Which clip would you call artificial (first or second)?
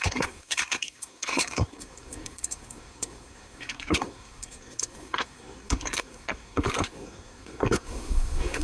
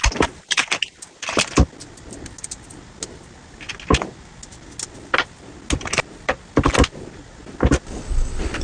first